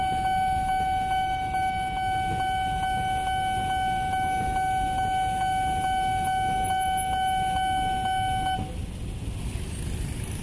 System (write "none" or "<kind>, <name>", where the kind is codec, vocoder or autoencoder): none